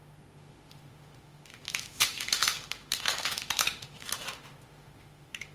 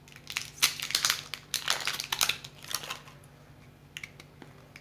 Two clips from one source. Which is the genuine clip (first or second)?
second